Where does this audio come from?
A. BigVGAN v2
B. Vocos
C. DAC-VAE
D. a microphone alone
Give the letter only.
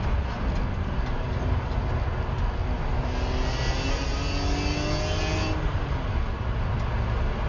D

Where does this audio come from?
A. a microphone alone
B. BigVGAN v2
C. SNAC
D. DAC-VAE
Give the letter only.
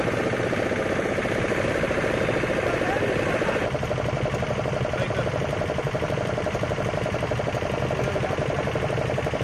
A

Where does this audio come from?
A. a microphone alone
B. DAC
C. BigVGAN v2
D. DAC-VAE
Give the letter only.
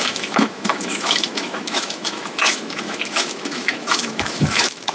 D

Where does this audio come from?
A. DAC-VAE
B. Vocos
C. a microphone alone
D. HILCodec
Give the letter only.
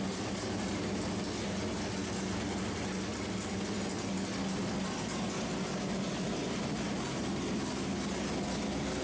C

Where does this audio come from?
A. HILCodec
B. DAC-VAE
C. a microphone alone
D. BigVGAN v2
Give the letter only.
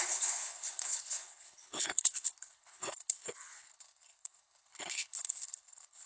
A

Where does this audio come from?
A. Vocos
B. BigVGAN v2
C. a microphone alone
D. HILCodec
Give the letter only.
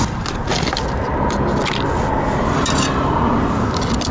B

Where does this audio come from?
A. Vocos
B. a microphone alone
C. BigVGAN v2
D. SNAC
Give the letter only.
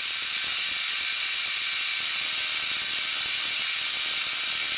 B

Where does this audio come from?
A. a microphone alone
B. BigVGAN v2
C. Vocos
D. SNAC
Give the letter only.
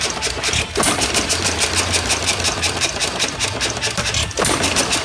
B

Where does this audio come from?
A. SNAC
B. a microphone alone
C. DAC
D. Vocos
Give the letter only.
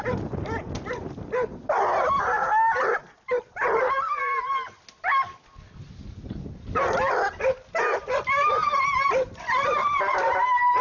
B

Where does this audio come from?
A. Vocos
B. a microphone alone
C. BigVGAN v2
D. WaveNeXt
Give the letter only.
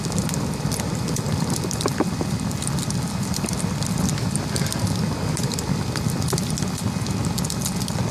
B